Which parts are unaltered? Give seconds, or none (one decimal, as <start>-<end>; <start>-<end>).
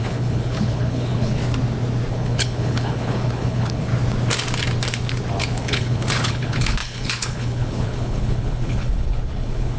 1.4-2.1; 3.9-5.4